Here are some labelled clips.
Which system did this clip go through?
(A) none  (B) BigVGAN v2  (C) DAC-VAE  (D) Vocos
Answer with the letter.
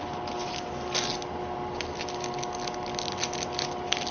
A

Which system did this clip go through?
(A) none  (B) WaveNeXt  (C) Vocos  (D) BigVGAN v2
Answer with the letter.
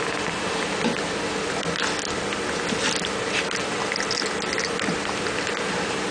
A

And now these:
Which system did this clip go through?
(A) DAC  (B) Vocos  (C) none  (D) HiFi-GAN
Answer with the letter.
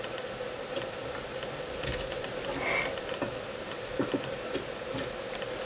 C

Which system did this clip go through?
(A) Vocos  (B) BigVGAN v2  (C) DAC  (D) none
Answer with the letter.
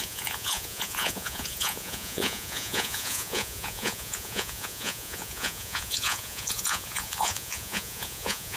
A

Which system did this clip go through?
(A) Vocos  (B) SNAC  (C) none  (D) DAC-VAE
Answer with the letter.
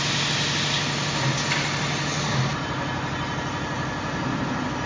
C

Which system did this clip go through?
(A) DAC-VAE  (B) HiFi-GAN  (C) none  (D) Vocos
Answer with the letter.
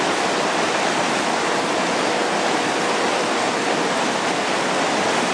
C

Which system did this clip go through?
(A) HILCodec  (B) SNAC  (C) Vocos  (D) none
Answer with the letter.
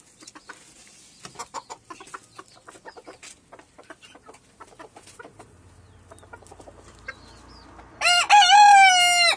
D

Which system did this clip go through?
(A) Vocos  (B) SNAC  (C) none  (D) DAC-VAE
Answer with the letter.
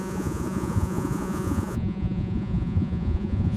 A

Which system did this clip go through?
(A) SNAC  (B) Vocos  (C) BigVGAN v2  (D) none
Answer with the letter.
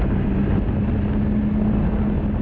D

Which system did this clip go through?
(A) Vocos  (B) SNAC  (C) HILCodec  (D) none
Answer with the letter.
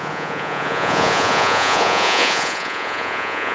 A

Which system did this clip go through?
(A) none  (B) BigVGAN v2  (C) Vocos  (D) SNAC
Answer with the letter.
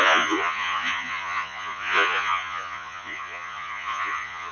C